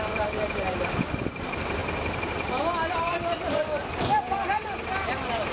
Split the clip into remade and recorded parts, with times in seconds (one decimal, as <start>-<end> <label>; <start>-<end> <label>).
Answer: 0.0-1.8 remade; 1.8-2.9 recorded; 2.9-3.6 remade; 3.6-5.1 recorded; 5.1-5.5 remade